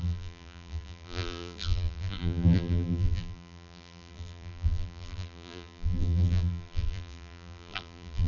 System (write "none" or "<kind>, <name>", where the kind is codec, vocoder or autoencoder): vocoder, BigVGAN v2